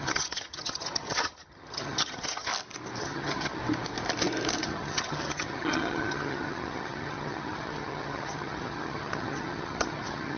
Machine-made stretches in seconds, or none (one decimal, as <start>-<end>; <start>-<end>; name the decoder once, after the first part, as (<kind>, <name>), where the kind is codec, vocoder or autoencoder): 0.0-2.5 (vocoder, HiFi-GAN); 3.0-3.6; 4.6-10.4